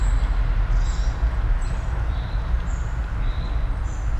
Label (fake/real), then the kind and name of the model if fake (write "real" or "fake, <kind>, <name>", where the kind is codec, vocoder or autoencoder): real